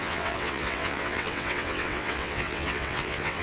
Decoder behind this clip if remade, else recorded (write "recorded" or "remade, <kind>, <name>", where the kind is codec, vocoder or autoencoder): remade, vocoder, WaveNeXt